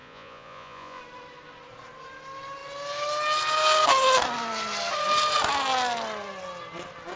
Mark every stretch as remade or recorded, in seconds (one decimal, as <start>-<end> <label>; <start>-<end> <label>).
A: 0.0-1.0 remade; 1.0-7.2 recorded